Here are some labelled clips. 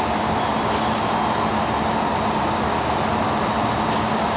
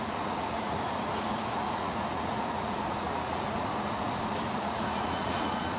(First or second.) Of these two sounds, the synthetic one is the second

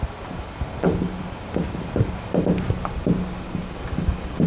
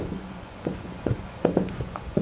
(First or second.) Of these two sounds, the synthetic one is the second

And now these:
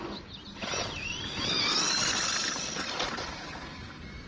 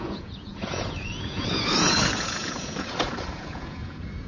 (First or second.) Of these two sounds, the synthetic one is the second